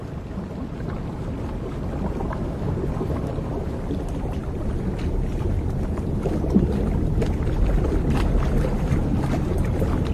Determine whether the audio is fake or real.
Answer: real